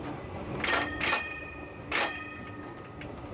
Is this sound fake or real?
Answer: real